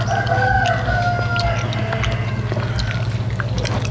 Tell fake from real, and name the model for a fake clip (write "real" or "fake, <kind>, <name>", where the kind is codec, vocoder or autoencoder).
real